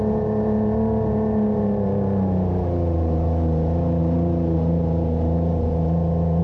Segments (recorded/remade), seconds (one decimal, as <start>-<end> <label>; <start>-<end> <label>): 0.0-6.4 recorded